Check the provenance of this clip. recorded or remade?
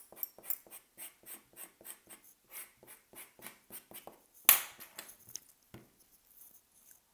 recorded